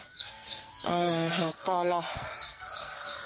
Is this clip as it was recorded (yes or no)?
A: no